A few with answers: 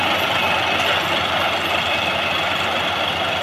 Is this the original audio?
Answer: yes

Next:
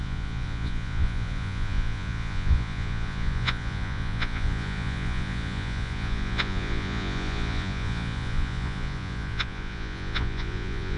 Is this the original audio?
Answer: no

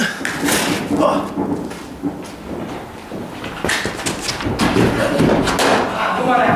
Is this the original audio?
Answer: yes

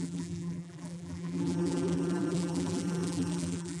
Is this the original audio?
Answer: no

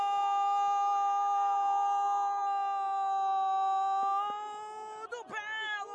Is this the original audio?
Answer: yes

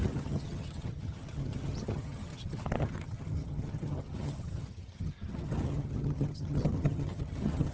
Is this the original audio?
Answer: no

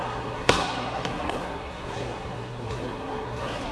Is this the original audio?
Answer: no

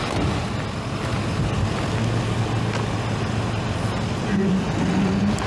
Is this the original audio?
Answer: yes